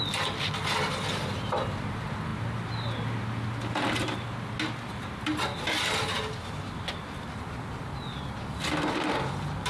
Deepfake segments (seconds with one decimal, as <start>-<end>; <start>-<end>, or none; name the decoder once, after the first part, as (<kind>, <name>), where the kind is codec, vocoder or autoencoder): none